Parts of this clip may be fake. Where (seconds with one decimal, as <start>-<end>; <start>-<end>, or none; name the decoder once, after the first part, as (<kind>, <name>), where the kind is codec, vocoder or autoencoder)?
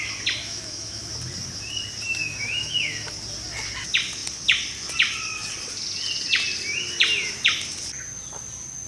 0.4-1.1 (autoencoder, DAC-VAE); 2.2-3.1